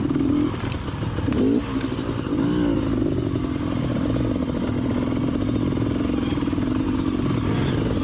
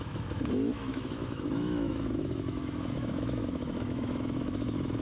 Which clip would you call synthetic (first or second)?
second